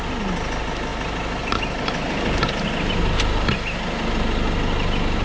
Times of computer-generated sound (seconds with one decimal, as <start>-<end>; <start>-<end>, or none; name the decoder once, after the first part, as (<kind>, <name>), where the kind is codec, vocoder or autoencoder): none